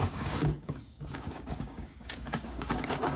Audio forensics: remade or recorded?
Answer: remade